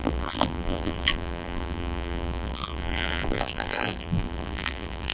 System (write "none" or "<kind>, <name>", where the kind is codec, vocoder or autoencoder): vocoder, BigVGAN v2